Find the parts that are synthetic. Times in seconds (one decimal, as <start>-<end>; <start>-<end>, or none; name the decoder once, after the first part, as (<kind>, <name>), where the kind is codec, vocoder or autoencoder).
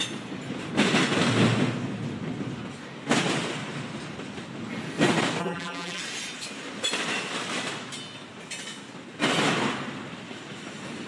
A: 5.4-6.0 (vocoder, BigVGAN v2)